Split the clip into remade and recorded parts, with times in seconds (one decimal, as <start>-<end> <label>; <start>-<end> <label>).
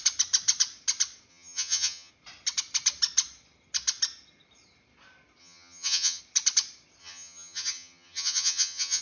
0.0-1.3 recorded; 1.3-2.1 remade; 2.1-5.4 recorded; 5.4-6.2 remade; 6.2-7.0 recorded; 7.0-9.0 remade